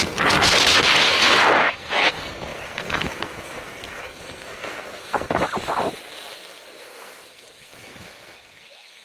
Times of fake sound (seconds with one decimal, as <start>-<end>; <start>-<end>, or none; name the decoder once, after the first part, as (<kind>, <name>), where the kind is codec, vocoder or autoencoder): 0.0-5.4 (codec, SNAC); 6.1-9.0